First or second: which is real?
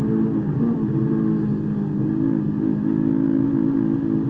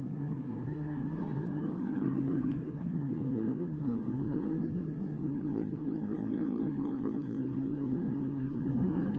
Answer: first